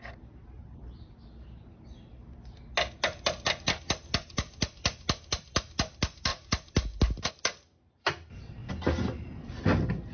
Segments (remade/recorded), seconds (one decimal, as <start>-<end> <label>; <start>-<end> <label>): 0.0-10.1 recorded